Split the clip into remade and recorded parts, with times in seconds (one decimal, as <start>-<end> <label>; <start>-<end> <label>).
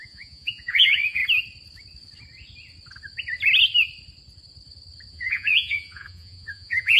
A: 0.0-1.2 remade; 1.2-5.1 recorded; 5.1-7.0 remade